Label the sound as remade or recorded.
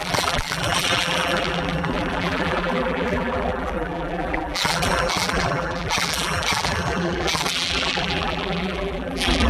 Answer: remade